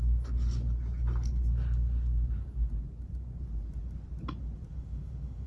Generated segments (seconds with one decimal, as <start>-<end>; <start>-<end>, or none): 4.7-5.5